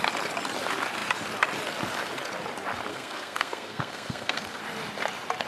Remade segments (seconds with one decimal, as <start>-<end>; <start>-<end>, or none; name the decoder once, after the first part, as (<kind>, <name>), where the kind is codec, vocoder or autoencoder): 2.9-4.6 (codec, SNAC)

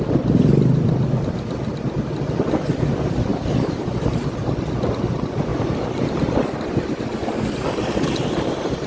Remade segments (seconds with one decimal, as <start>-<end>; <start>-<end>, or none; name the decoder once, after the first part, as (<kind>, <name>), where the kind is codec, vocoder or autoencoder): none

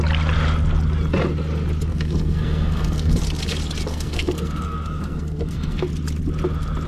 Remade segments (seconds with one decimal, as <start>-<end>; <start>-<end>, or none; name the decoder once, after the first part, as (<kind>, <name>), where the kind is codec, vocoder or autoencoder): 1.9-3.2 (codec, SNAC); 3.9-5.9

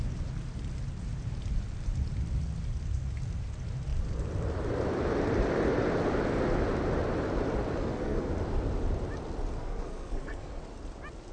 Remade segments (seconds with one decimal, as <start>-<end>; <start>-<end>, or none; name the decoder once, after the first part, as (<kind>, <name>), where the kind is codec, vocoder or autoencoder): 7.8-8.3 (codec, SNAC); 9.6-10.6